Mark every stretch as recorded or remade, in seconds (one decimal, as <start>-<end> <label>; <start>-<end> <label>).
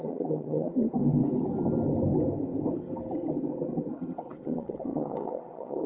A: 0.0-1.0 remade; 1.0-3.9 recorded; 3.9-5.9 remade